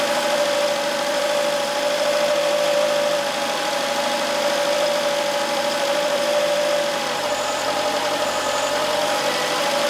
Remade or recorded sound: remade